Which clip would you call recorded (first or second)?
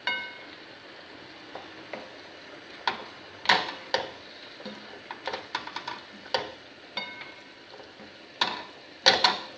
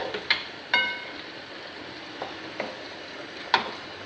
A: first